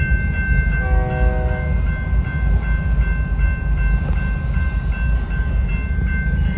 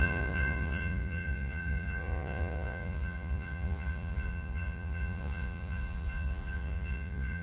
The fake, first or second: second